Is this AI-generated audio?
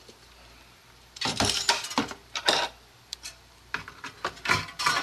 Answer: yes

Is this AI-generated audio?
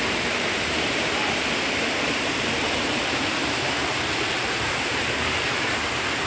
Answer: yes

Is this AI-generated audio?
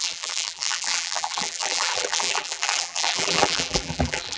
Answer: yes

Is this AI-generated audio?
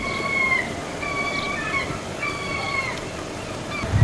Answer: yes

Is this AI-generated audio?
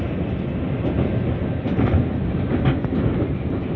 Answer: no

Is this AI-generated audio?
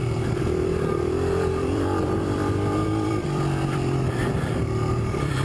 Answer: yes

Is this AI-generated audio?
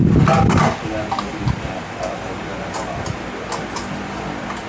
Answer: no